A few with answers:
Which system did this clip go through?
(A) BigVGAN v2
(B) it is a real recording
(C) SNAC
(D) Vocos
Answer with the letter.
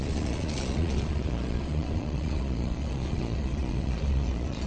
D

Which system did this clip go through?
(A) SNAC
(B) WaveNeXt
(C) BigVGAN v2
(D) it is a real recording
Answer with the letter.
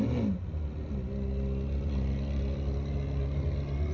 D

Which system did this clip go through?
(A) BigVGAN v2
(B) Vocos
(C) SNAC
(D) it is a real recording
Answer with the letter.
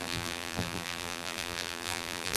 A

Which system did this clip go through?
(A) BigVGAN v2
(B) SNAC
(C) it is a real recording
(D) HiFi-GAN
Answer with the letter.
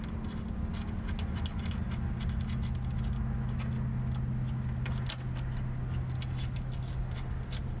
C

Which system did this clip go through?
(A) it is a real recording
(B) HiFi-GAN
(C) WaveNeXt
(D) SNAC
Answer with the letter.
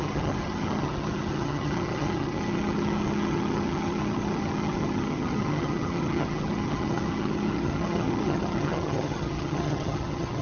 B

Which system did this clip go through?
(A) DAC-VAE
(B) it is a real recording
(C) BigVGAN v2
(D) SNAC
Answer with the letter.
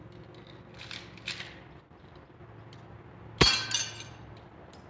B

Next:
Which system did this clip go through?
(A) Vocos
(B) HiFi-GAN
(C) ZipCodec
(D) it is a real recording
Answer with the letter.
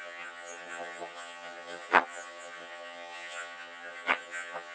B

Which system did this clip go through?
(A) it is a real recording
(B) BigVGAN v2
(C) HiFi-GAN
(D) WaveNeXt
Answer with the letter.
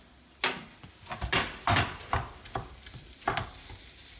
A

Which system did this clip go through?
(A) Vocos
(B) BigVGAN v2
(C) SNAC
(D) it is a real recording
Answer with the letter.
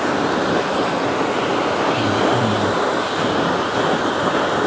B